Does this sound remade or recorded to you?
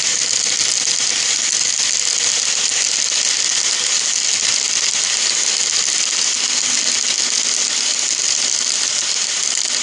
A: recorded